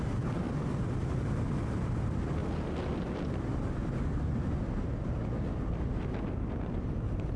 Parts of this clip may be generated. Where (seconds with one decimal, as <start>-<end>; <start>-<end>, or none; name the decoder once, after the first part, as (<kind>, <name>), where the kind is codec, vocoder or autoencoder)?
2.4-3.1 (vocoder, BigVGAN v2)